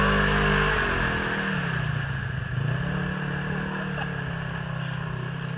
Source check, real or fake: real